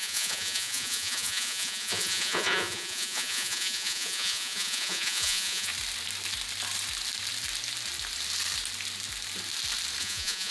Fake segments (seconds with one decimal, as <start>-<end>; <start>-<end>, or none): 0.0-5.7; 10.0-10.5